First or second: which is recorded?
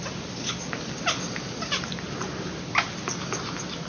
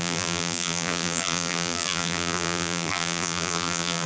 first